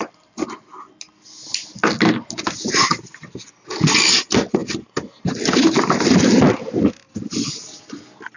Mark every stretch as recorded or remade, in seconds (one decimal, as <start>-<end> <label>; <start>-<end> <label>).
0.0-8.4 recorded